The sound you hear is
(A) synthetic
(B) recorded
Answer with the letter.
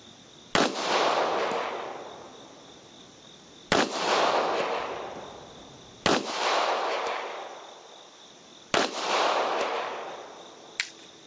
B